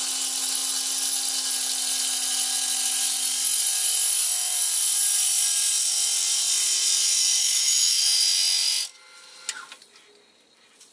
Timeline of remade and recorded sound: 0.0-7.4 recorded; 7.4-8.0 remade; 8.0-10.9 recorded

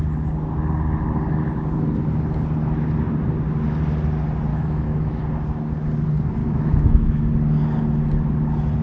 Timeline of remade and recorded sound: 0.0-4.5 recorded; 4.5-5.2 remade; 5.2-6.4 recorded; 6.4-7.2 remade; 7.2-8.8 recorded